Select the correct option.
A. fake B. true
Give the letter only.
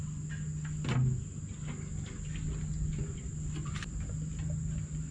B